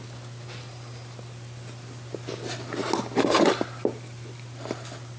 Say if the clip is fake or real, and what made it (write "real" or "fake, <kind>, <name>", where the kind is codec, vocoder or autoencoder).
real